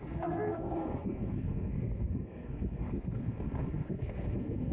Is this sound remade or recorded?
remade